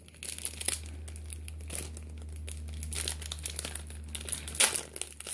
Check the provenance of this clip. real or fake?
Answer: real